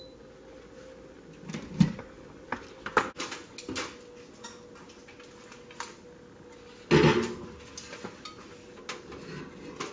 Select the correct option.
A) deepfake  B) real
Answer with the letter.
B